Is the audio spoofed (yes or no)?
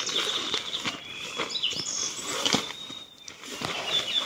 no